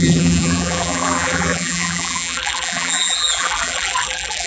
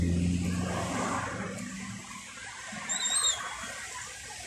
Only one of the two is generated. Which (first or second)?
first